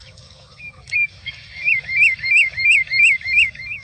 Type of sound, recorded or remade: remade